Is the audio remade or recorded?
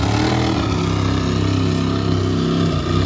recorded